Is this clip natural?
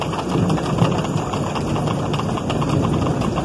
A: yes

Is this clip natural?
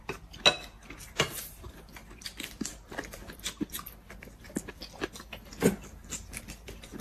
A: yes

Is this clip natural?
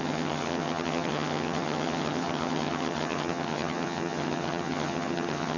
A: no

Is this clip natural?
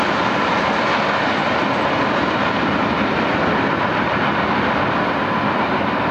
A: yes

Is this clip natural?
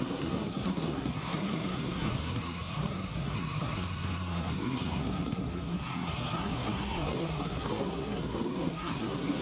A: no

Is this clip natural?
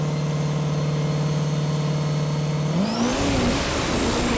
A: yes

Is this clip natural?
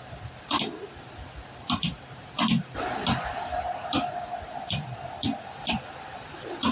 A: yes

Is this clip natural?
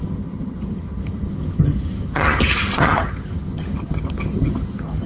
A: no